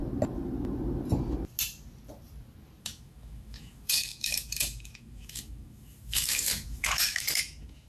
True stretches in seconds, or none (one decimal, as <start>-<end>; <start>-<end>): 0.0-2.8